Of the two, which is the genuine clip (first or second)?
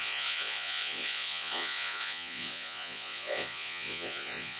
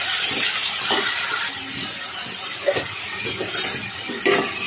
second